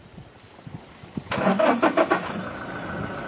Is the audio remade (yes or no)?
no